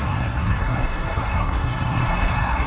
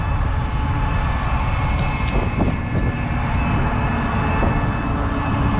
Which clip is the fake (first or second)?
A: first